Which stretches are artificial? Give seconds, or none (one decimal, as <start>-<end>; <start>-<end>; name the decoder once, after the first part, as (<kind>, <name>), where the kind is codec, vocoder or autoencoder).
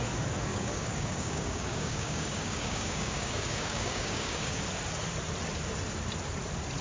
0.5-4.6 (codec, DAC)